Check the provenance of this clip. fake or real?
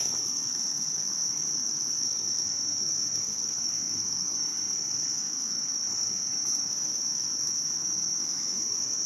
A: fake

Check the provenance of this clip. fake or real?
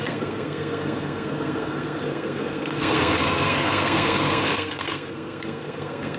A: fake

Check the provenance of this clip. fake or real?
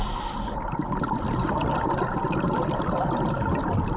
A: real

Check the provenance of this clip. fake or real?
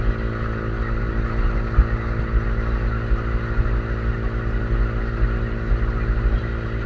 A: real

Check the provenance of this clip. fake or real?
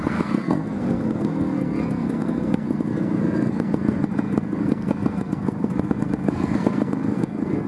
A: fake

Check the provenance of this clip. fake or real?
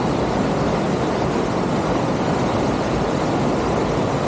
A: real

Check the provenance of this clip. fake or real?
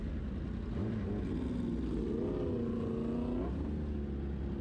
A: real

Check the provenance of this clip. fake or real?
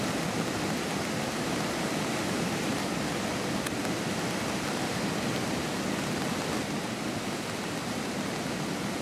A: real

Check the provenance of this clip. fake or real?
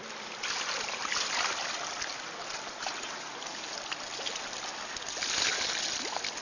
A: real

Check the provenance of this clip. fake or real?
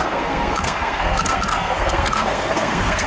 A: fake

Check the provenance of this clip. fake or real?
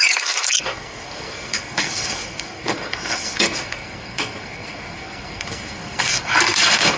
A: fake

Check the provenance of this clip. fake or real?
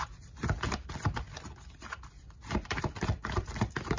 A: real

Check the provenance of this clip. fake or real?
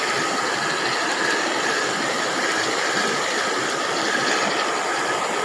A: real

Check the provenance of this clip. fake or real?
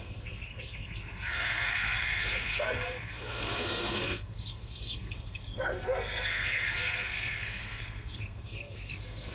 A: fake